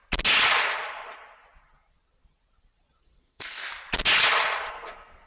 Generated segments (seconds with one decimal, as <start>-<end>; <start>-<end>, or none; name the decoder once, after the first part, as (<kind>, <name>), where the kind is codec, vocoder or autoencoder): 3.2-3.6 (codec, SNAC); 4.7-5.3